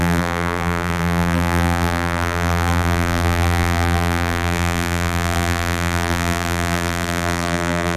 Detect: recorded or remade remade